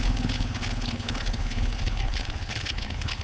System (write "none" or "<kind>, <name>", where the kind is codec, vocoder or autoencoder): codec, HILCodec